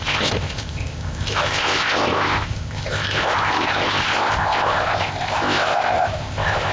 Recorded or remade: remade